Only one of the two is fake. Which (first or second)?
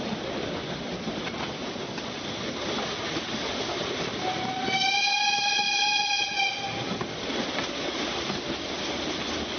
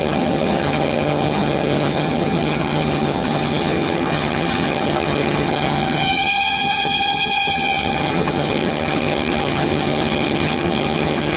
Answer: second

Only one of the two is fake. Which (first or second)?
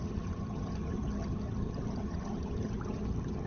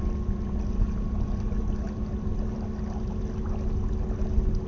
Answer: first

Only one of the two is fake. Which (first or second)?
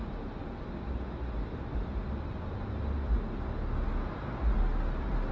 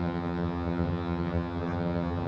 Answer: second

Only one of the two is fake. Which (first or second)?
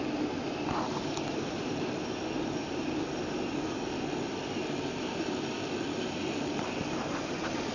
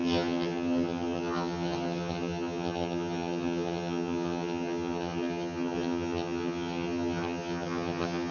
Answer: second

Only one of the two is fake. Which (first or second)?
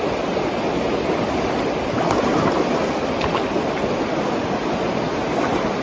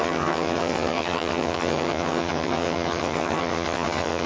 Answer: second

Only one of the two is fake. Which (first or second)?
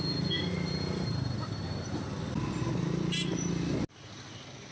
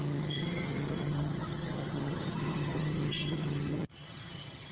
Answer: second